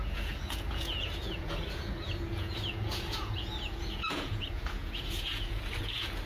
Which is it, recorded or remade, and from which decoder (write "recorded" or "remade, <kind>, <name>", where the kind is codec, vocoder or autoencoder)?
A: remade, vocoder, Vocos